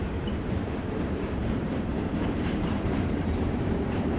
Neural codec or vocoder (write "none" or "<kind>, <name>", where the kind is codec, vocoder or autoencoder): vocoder, BigVGAN v2